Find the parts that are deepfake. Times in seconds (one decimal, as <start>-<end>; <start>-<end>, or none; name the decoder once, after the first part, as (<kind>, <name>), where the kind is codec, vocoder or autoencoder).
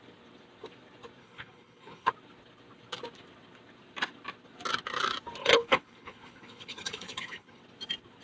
1.2-2.1 (codec, HILCodec); 5.4-7.6